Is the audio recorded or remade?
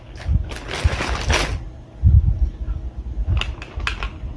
recorded